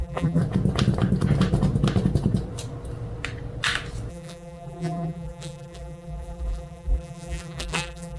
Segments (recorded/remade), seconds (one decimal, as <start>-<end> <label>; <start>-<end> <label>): 0.0-0.4 remade; 0.4-4.1 recorded; 4.1-8.2 remade